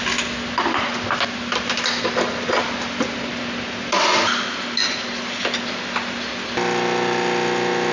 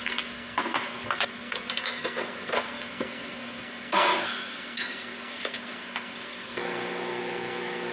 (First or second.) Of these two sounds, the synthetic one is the second